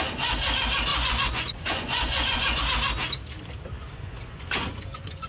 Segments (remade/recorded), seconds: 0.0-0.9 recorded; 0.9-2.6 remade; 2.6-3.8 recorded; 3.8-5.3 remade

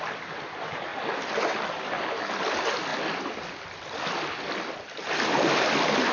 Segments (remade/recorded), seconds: 0.0-6.1 recorded

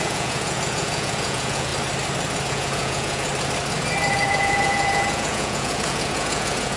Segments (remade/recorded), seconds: 0.0-1.7 remade; 1.7-2.5 recorded; 2.5-3.3 remade; 3.3-4.1 recorded; 4.1-6.8 remade

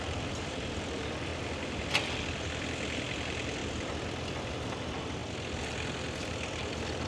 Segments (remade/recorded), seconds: 0.0-1.3 remade; 1.3-1.9 recorded; 1.9-3.6 remade; 3.6-4.5 recorded; 4.5-5.2 remade; 5.2-6.3 recorded; 6.3-7.1 remade